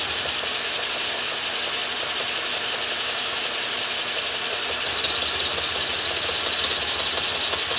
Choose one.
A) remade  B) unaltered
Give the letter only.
B